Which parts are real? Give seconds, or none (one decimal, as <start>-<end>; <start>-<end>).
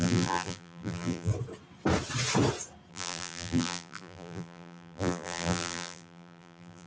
1.3-2.9